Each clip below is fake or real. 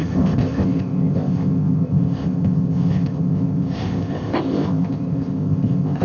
fake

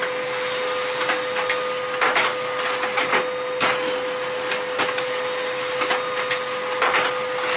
real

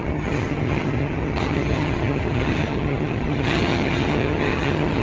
fake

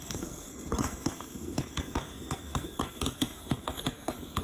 fake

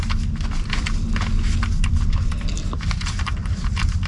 real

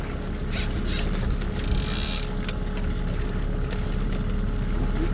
real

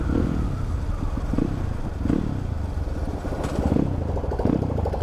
real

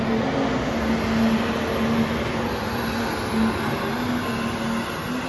real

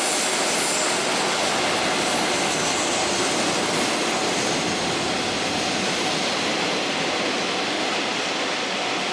real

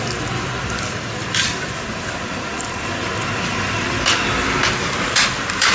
real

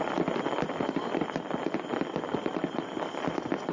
real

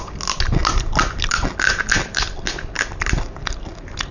real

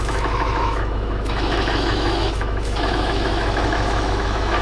fake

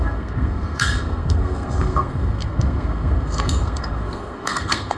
fake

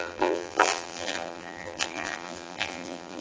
fake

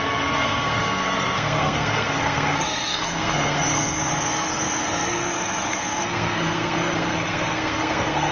fake